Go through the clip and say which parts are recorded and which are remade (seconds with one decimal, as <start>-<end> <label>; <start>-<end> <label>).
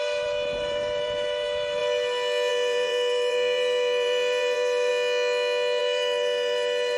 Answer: 0.0-1.8 remade; 1.8-2.5 recorded; 2.5-4.9 remade; 4.9-5.8 recorded; 5.8-7.0 remade